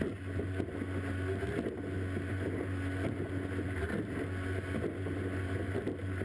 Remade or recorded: recorded